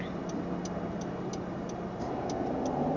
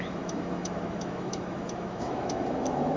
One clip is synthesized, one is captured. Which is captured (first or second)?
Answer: first